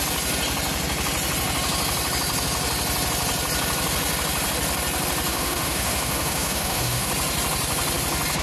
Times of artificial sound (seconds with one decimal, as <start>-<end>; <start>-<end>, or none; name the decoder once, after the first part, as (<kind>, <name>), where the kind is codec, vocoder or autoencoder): 5.3-7.1 (autoencoder, DAC-VAE)